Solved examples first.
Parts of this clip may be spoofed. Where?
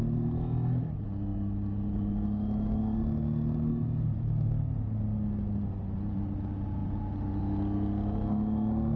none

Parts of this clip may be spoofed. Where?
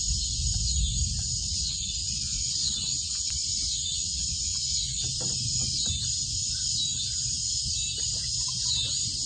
1.4-5.0 (vocoder, Vocos)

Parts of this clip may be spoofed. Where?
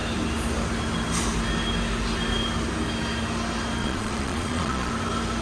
3.8-4.9 (vocoder, Vocos)